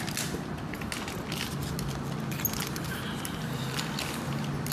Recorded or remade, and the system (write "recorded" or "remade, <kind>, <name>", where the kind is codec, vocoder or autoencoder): recorded